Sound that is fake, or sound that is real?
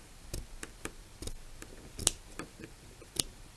real